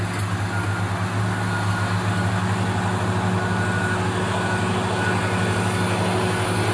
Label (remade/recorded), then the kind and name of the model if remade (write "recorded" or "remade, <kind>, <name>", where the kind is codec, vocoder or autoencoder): recorded